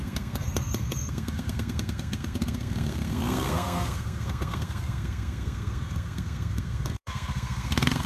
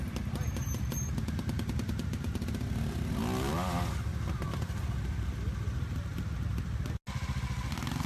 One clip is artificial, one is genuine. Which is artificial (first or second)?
first